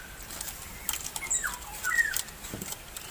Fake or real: real